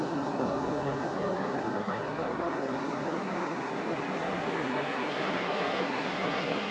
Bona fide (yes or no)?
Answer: no